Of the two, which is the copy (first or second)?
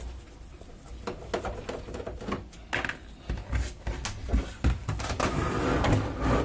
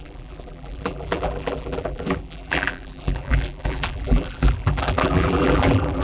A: second